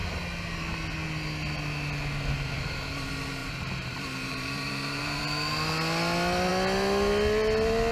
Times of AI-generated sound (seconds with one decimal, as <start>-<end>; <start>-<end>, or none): 3.4-5.2